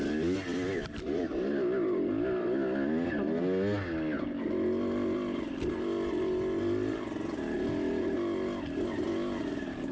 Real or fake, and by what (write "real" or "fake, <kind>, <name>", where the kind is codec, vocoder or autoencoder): real